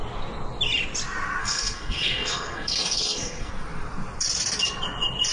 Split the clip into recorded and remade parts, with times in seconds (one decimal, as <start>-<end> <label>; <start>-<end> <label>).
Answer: 0.0-1.4 recorded; 1.4-3.5 remade; 3.5-5.3 recorded